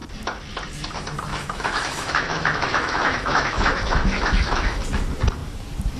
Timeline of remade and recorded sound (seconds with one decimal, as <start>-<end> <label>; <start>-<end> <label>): 0.0-1.3 recorded; 1.3-4.8 remade; 4.8-6.0 recorded